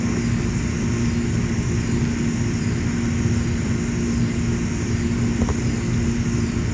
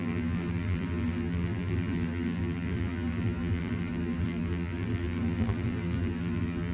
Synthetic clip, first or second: second